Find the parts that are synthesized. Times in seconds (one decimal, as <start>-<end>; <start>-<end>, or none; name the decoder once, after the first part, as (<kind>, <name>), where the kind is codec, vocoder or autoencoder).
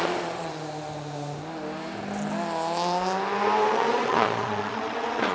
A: 0.0-0.5 (vocoder, Vocos); 3.7-5.3